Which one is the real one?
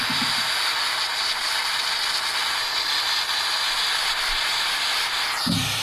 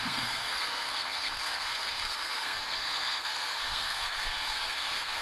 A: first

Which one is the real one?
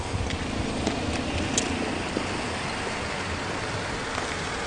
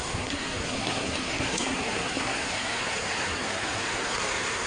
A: first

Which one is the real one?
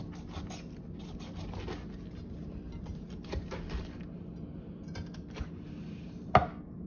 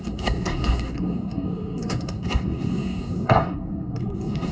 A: first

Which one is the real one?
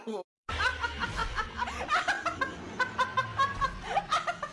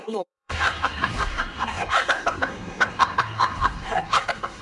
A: first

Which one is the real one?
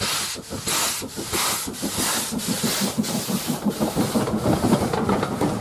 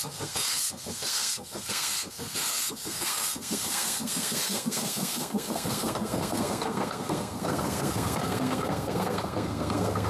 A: first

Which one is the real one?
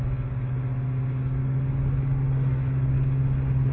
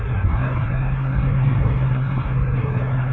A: first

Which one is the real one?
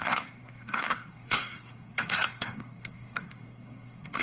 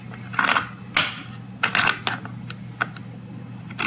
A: second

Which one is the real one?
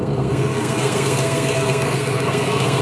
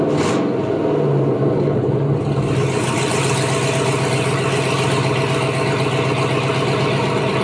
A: second